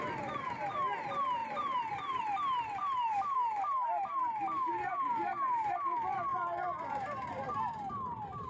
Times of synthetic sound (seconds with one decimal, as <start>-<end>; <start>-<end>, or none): 1.4-2.2; 2.8-3.7; 6.3-7.6